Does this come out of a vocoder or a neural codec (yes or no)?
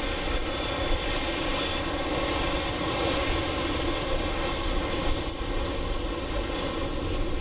no